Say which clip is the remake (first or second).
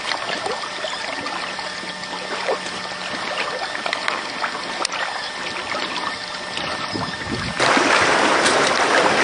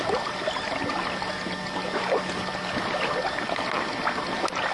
first